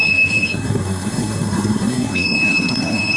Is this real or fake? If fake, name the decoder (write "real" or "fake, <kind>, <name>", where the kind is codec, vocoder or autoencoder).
fake, codec, SNAC